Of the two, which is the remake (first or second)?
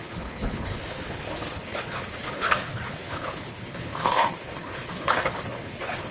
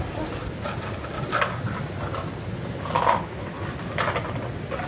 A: first